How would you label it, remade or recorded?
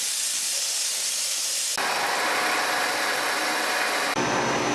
recorded